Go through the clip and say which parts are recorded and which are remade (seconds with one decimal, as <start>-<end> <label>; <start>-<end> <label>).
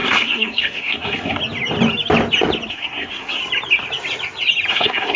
0.0-1.4 remade; 1.4-2.7 recorded; 2.7-3.4 remade; 3.4-4.7 recorded; 4.7-5.2 remade